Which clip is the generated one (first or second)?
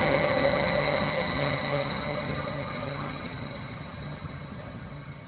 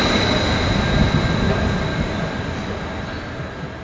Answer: first